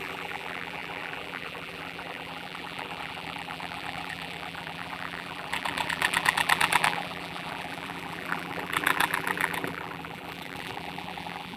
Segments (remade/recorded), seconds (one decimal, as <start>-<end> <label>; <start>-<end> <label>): 0.0-11.6 remade